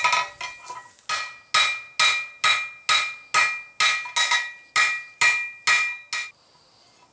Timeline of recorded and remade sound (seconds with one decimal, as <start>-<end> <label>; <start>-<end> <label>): 0.0-7.1 recorded